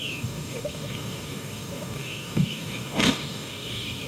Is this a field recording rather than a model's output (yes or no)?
no